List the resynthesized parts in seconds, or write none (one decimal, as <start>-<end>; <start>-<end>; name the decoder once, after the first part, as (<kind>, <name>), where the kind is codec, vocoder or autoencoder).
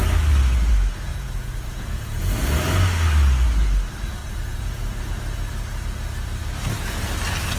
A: 1.1-2.2 (vocoder, Vocos); 4.2-5.0